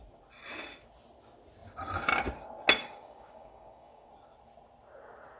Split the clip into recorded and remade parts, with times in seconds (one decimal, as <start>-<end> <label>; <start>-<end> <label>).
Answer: 0.0-2.8 recorded; 2.8-4.1 remade; 4.1-5.4 recorded